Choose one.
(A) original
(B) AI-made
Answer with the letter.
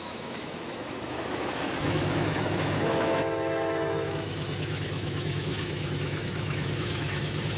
B